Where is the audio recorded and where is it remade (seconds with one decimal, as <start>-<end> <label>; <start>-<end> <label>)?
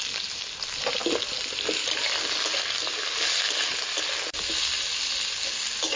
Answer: 0.0-6.0 recorded